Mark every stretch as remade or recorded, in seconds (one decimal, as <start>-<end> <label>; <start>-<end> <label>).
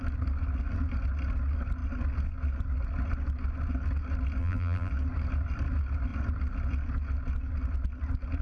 0.0-4.4 recorded; 4.4-4.9 remade; 4.9-8.4 recorded